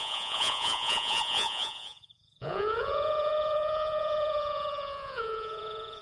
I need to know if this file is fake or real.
fake